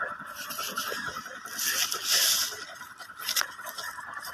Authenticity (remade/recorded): recorded